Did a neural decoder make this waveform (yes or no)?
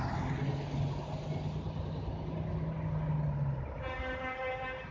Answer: no